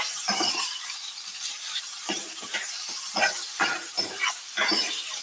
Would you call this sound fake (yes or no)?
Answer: yes